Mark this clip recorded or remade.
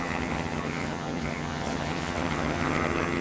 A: remade